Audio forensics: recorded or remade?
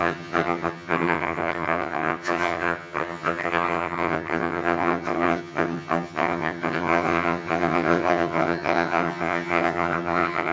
remade